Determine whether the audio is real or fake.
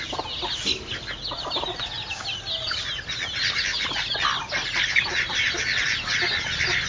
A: real